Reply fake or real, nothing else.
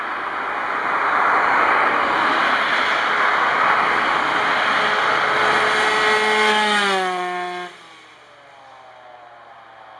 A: real